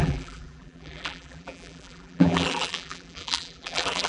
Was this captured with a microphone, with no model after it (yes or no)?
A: no